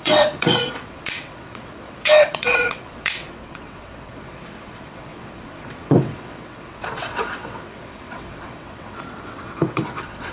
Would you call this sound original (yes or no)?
no